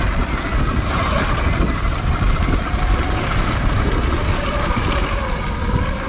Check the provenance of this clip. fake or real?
real